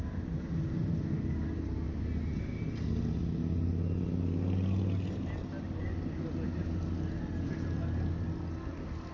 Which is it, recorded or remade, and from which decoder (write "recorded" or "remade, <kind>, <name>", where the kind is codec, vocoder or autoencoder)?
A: recorded